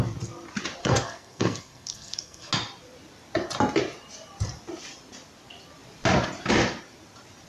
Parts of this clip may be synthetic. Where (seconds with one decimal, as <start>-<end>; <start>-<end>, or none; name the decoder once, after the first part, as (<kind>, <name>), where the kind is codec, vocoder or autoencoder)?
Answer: 0.8-2.5 (codec, SNAC)